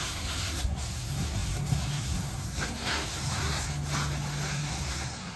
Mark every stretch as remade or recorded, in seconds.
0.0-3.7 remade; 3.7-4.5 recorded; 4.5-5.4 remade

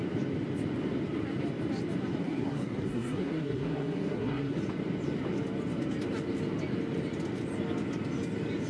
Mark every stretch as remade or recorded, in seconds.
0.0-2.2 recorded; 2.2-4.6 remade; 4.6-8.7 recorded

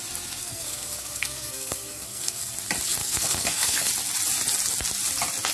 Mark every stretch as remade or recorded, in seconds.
0.0-0.4 recorded; 0.4-2.5 remade; 2.5-3.0 recorded; 3.0-3.9 remade; 3.9-5.5 recorded

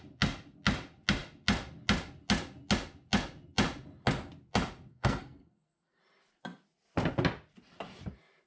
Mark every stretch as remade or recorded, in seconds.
0.0-4.9 recorded; 4.9-6.0 remade; 6.0-8.5 recorded